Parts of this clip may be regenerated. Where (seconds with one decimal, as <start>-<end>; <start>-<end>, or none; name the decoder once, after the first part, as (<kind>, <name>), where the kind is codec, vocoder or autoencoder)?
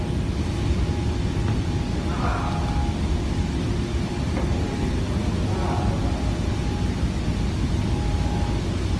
2.8-4.6 (vocoder, BigVGAN v2)